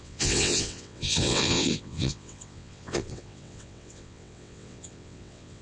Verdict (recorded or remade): remade